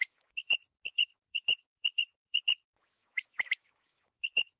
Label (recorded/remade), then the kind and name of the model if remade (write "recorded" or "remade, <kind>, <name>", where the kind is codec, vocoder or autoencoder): remade, autoencoder, DAC-VAE